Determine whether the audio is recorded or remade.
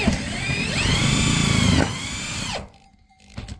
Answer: recorded